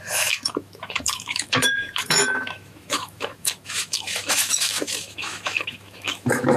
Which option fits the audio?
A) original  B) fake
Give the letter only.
B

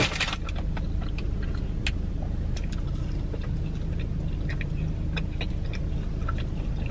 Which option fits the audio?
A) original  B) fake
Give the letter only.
A